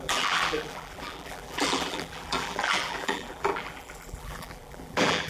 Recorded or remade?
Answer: remade